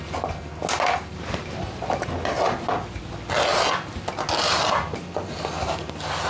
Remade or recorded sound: recorded